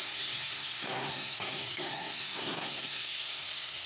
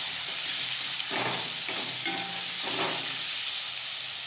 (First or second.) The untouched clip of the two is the second